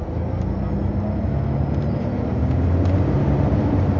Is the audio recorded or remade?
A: recorded